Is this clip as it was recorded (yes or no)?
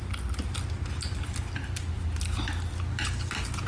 yes